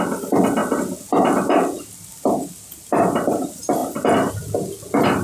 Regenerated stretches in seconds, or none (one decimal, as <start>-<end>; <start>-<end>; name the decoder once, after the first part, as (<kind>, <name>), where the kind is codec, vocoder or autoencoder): none